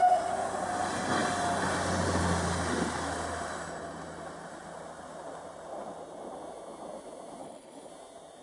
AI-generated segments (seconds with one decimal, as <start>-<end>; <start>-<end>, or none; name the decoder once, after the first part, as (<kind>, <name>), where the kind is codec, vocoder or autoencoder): 7.4-7.9 (codec, HILCodec)